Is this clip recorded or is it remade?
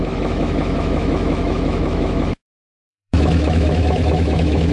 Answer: remade